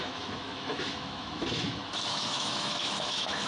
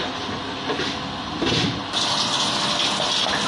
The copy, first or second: first